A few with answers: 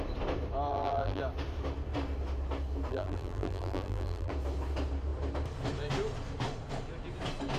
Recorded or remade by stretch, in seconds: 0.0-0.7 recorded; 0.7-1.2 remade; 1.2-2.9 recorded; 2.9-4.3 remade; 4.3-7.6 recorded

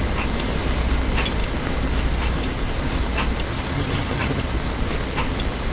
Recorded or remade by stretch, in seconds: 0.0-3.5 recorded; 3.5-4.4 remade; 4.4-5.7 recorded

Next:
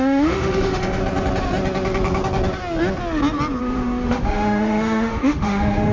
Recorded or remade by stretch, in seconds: 0.0-1.0 remade; 1.0-3.6 recorded; 3.6-5.9 remade

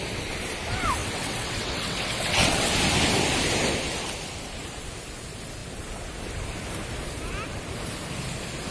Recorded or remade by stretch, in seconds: 0.0-1.0 recorded; 1.0-2.7 remade; 2.7-8.7 recorded